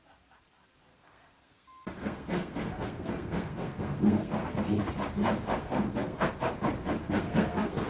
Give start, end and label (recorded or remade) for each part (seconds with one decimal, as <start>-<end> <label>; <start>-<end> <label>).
0.0-0.9 recorded; 0.9-4.8 remade; 4.8-5.6 recorded; 5.6-6.3 remade; 6.3-7.0 recorded; 7.0-7.9 remade